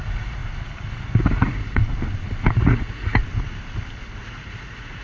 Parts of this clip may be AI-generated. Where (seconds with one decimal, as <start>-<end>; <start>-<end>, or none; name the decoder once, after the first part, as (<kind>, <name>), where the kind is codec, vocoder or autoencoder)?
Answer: 0.0-0.4 (vocoder, Vocos); 1.2-1.8; 2.5-3.2; 4.2-5.0